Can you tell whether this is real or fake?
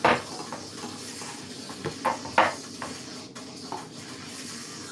real